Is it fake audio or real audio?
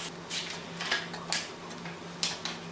real